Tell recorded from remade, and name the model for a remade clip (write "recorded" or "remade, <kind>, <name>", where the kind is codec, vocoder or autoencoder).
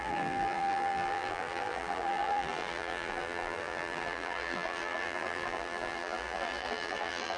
remade, vocoder, BigVGAN v2